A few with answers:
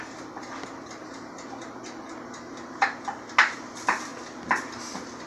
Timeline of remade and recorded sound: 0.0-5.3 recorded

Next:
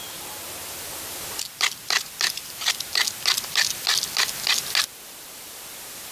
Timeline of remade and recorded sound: 0.0-6.1 recorded

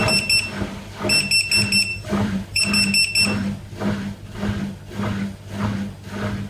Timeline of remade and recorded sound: 0.0-1.9 recorded; 1.9-2.6 remade; 2.6-6.5 recorded

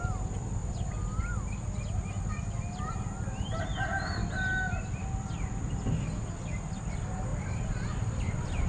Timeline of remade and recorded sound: 0.0-0.6 recorded; 0.6-1.3 remade; 1.3-7.3 recorded; 7.3-8.7 remade

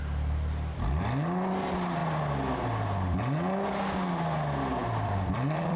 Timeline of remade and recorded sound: 0.0-4.8 recorded; 4.8-5.8 remade